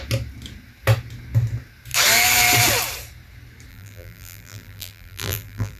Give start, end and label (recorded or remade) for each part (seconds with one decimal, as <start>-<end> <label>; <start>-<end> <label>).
0.0-3.7 recorded; 3.7-5.8 remade